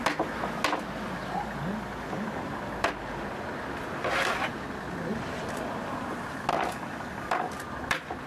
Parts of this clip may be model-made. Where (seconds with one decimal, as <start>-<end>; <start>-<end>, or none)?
6.5-7.5